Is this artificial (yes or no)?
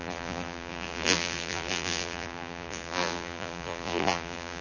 yes